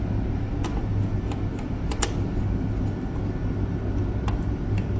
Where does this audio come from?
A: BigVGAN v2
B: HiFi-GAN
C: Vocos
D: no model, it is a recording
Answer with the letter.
D